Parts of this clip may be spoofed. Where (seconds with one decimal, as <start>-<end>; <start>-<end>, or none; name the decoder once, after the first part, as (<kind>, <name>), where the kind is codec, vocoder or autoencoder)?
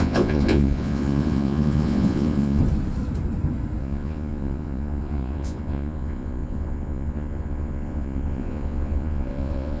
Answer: 0.0-2.6 (vocoder, Vocos); 3.8-9.8